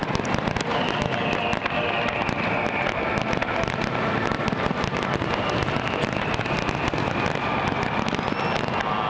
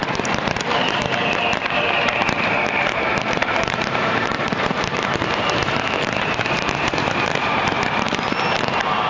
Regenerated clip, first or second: second